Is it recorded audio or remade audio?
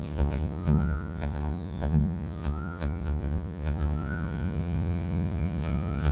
remade